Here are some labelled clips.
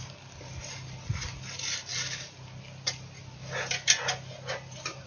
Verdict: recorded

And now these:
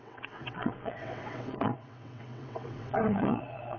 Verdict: remade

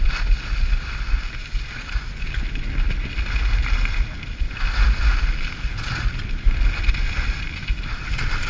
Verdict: recorded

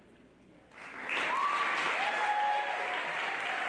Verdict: recorded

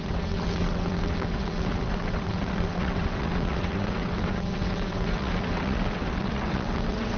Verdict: remade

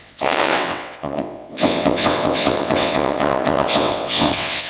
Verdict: remade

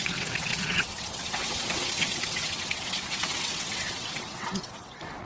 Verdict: remade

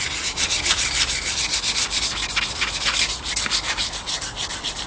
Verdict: recorded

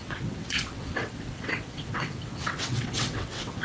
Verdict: remade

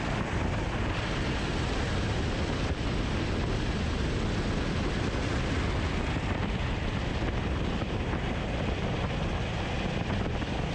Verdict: recorded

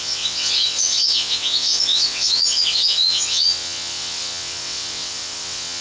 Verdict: remade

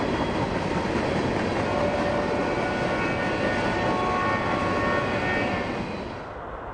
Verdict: recorded